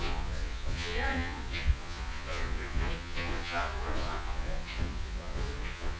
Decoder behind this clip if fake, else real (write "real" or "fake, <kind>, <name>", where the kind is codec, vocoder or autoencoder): fake, vocoder, Vocos